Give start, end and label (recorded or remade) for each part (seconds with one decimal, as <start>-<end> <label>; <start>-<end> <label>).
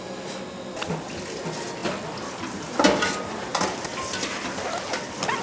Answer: 0.0-5.4 recorded